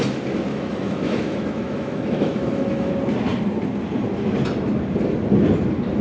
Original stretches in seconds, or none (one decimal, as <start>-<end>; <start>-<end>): 0.0-0.5; 2.9-6.0